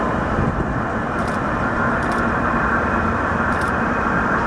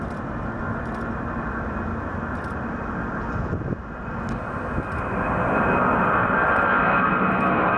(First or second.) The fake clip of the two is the first